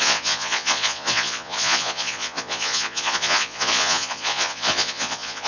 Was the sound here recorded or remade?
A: remade